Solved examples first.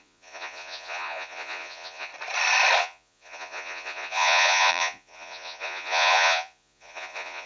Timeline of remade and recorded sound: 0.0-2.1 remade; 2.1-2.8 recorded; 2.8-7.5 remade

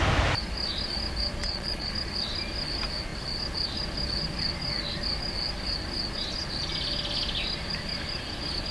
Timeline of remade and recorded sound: 0.0-1.4 recorded; 1.4-1.9 remade; 1.9-8.7 recorded

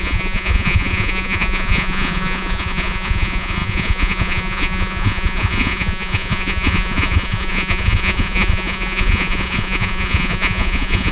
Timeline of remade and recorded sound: 0.0-11.1 remade

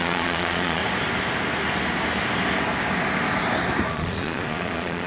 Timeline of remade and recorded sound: 0.0-0.8 remade; 0.8-3.9 recorded; 3.9-5.1 remade

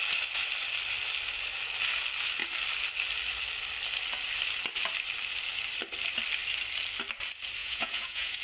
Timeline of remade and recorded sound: 0.0-7.6 recorded; 7.6-8.4 remade